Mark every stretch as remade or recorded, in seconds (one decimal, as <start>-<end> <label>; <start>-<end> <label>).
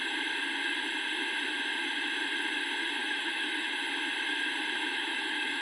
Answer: 0.0-3.0 recorded; 3.0-3.8 remade; 3.8-4.9 recorded; 4.9-5.6 remade